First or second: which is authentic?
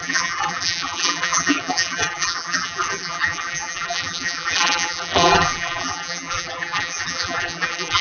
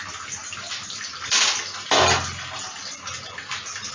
second